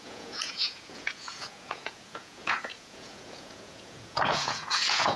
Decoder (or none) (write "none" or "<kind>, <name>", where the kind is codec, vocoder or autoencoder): vocoder, Vocos